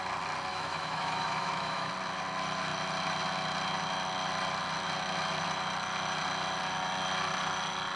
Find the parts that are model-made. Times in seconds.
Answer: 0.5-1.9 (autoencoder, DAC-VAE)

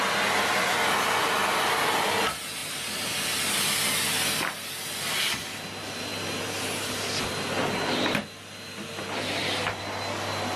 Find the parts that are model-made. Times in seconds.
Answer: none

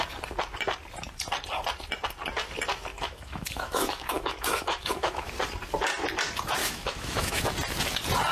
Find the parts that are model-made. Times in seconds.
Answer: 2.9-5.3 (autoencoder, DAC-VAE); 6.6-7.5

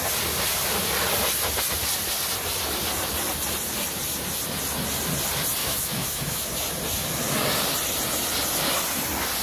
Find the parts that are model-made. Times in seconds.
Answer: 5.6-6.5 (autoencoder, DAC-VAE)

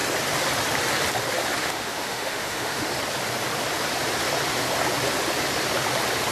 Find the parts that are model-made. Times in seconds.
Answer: 1.6-2.9 (autoencoder, DAC-VAE)

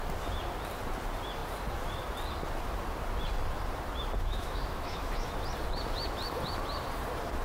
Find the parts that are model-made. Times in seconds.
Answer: 4.2-5.3 (autoencoder, DAC-VAE)